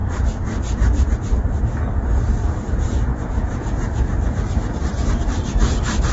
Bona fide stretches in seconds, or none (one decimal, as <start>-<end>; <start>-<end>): 1.6-3.1; 5.5-6.1